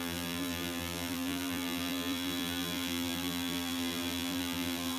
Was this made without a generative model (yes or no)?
no